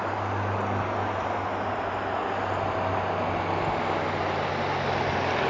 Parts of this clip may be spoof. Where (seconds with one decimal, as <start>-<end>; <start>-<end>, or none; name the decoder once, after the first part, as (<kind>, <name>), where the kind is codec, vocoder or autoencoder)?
none